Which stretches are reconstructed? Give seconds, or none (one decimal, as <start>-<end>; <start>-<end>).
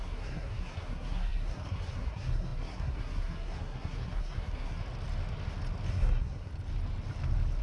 0.0-4.8; 5.9-6.5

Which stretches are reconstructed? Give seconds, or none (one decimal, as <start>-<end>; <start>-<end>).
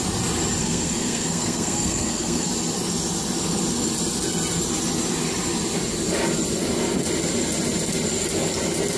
0.6-2.5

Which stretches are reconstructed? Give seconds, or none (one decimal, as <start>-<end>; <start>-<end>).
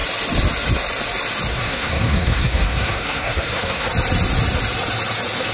1.5-3.9